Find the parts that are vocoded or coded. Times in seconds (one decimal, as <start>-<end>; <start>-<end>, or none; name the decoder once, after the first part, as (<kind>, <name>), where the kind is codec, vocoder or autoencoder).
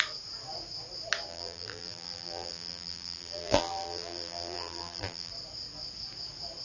1.3-5.3 (vocoder, BigVGAN v2)